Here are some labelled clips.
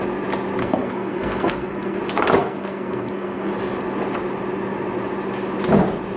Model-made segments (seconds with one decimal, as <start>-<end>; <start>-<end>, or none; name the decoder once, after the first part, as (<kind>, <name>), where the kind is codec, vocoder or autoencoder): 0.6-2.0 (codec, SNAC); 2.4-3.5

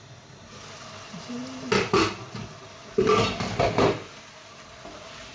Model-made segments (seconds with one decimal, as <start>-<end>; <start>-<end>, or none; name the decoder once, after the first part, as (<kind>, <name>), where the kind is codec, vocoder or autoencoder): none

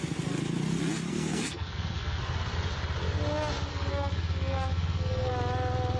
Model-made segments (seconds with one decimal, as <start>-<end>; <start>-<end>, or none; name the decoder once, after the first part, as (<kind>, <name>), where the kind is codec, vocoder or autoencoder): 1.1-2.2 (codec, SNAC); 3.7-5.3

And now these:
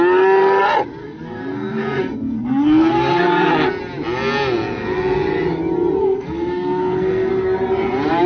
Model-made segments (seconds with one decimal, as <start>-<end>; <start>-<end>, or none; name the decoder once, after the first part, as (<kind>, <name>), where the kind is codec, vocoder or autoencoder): 1.0-3.7 (codec, SNAC); 6.0-7.3

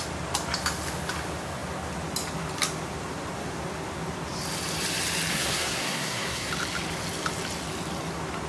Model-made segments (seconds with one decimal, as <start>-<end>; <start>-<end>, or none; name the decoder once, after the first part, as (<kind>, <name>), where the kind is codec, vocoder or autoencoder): 5.3-6.5 (codec, SNAC)

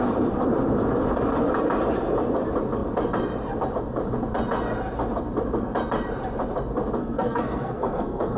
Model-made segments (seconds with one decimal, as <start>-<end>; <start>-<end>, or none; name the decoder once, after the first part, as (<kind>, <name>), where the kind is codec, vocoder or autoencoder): 7.0-8.4 (codec, SNAC)